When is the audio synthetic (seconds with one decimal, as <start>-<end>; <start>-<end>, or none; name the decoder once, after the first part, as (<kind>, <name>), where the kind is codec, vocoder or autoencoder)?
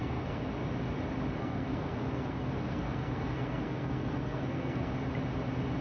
0.0-0.5 (codec, SNAC); 1.4-4.9